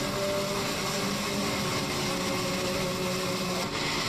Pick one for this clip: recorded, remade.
recorded